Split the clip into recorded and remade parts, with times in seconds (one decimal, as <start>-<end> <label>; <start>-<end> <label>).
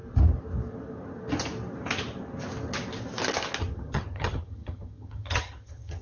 0.0-3.6 recorded; 3.6-6.0 remade